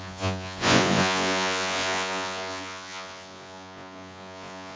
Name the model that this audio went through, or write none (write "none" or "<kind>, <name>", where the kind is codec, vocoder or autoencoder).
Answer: vocoder, Vocos